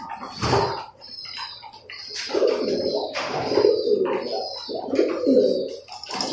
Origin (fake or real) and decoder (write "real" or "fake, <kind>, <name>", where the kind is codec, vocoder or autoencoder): real